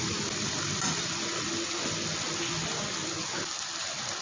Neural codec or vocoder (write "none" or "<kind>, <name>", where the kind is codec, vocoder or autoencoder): none